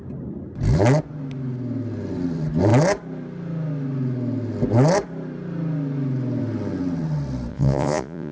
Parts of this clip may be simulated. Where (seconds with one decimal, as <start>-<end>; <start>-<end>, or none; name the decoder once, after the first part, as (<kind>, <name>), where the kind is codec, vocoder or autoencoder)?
7.5-8.3 (vocoder, Vocos)